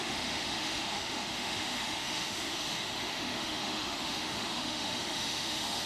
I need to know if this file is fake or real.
fake